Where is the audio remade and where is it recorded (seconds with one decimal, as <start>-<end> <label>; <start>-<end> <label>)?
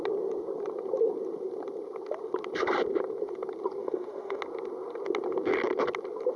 0.0-3.8 recorded; 3.8-4.4 remade; 4.4-6.4 recorded